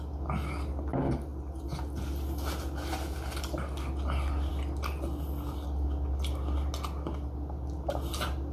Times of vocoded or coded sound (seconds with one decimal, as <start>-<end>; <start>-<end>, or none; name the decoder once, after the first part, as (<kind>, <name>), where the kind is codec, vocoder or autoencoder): none